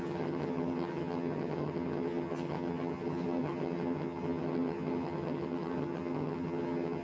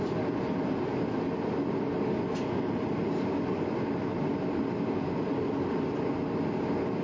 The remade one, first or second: first